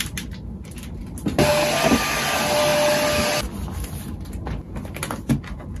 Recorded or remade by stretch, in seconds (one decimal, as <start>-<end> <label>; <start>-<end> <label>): 0.0-1.0 recorded; 1.0-1.5 remade; 1.5-5.8 recorded